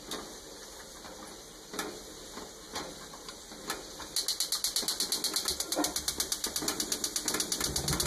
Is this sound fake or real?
real